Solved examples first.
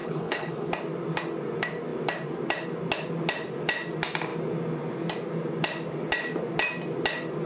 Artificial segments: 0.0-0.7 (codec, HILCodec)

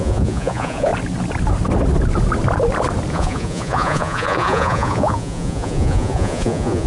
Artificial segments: 0.0-0.9 (vocoder, Vocos); 3.1-6.9